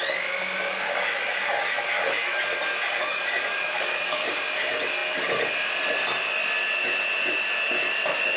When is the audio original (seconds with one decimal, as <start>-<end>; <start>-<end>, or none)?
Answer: 0.0-0.7; 2.4-2.9; 4.3-8.4

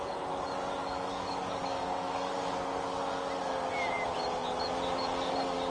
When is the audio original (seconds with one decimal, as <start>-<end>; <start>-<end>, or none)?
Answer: 0.0-0.8; 2.3-5.7

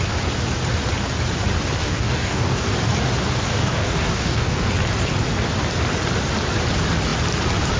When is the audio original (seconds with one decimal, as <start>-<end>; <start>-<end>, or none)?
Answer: 0.0-1.8; 2.7-3.5; 4.7-7.8

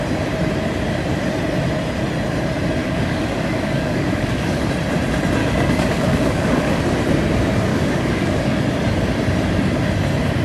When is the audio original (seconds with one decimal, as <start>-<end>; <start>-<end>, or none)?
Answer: 0.0-2.8; 4.7-5.4; 6.8-7.7; 8.6-10.4

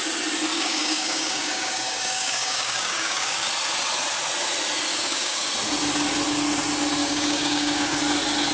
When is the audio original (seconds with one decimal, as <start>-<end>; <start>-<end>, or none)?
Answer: 0.0-0.5; 3.5-4.9; 5.5-7.0; 8.0-8.5

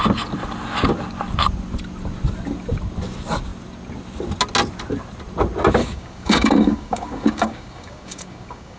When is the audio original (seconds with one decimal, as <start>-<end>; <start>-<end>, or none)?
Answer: 0.0-5.8

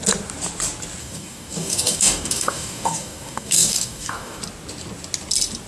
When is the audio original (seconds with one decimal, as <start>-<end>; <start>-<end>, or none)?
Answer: 0.0-1.0; 4.4-5.7

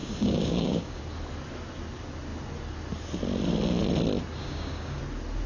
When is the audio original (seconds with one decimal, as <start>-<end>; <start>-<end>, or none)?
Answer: 1.0-4.4; 5.0-5.5